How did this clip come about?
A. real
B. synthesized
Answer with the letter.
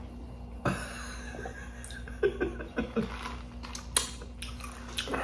A